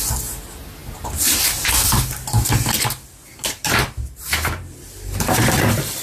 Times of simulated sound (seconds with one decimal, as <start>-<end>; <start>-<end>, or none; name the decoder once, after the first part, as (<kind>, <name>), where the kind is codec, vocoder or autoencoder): 3.4-6.0 (vocoder, BigVGAN v2)